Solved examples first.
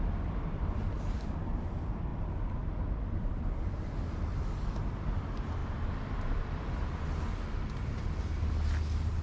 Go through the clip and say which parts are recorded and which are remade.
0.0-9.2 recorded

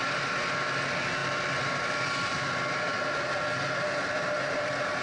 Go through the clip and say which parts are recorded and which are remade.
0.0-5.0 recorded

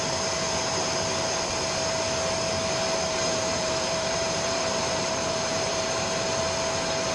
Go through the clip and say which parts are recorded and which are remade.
0.0-3.1 recorded; 3.1-6.4 remade; 6.4-7.1 recorded

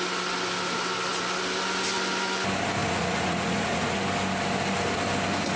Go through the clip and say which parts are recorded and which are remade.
0.0-2.8 recorded; 2.8-4.0 remade; 4.0-5.6 recorded

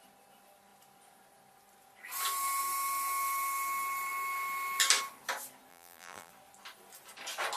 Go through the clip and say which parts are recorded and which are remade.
0.0-5.7 recorded; 5.7-6.3 remade; 6.3-7.6 recorded

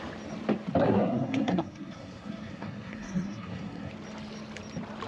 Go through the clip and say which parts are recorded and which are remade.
0.0-0.8 recorded; 0.8-3.9 remade; 3.9-5.1 recorded

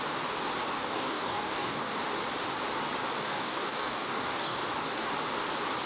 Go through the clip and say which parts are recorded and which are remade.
0.0-0.7 recorded; 0.7-2.0 remade; 2.0-3.3 recorded; 3.3-4.6 remade; 4.6-5.9 recorded